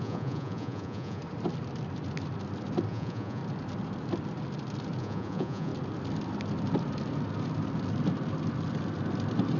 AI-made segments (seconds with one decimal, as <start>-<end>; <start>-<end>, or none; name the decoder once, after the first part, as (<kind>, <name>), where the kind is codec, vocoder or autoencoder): 0.0-1.2 (vocoder, Vocos); 2.9-3.4; 5.0-5.7